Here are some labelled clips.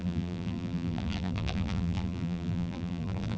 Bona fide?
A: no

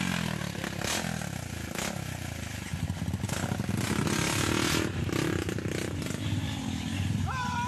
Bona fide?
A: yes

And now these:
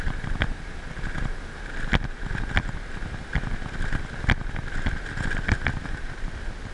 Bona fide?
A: yes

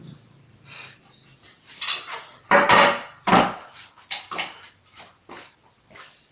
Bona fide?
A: no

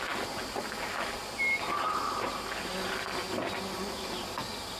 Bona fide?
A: yes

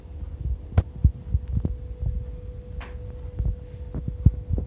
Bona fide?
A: yes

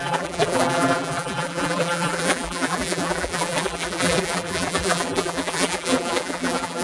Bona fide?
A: no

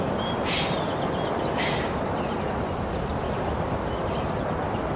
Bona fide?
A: yes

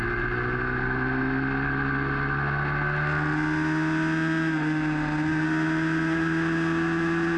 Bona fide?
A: yes